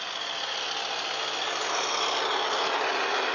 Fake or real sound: real